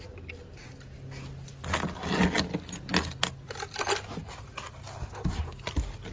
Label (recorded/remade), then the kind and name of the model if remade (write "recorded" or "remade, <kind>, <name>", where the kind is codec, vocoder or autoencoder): recorded